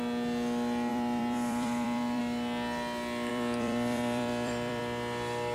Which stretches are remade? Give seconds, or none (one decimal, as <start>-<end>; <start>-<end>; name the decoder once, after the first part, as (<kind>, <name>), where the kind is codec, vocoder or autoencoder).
0.9-2.2 (vocoder, BigVGAN v2); 3.3-4.8